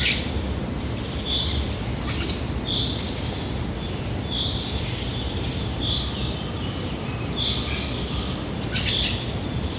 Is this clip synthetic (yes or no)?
no